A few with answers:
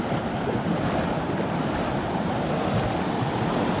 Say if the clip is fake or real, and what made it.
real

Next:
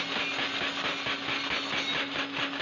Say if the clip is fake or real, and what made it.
real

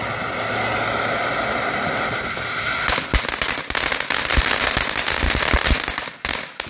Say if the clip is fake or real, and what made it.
real